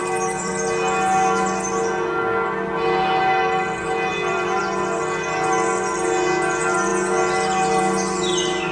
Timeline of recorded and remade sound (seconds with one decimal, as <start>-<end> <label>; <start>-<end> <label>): 0.0-0.5 remade; 0.5-4.1 recorded; 4.1-4.6 remade; 4.6-8.7 recorded